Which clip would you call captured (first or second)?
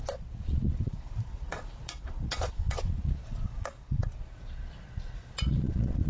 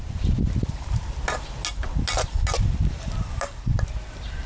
second